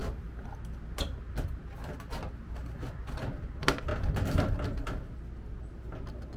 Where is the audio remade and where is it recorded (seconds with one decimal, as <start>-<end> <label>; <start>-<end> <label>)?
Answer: 0.0-6.4 recorded